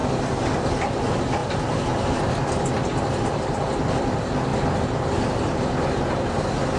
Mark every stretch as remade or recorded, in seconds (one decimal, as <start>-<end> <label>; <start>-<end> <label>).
0.0-0.6 remade; 0.6-4.5 recorded; 4.5-5.6 remade; 5.6-6.8 recorded